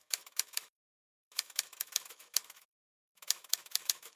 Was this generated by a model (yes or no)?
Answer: yes